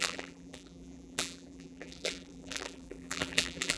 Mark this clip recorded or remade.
remade